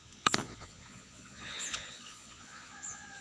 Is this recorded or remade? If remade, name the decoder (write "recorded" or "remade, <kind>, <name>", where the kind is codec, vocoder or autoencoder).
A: remade, vocoder, Vocos